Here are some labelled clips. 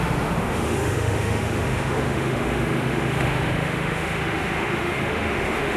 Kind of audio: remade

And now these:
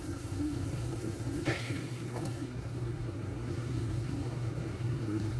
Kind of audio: remade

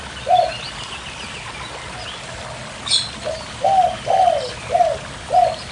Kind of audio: recorded